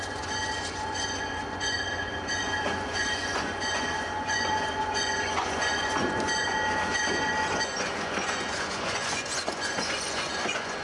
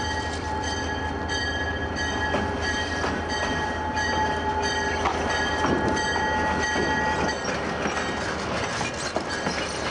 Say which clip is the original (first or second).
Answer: second